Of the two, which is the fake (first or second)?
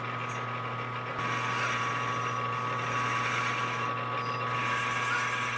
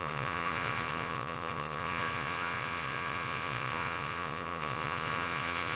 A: second